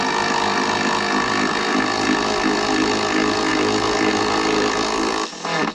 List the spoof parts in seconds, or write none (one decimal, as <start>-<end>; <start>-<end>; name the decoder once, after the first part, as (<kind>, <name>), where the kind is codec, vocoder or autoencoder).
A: none